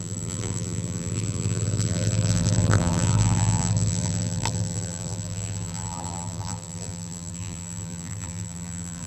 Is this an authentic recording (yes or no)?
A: no